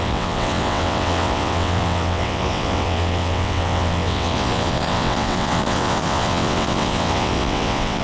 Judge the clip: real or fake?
fake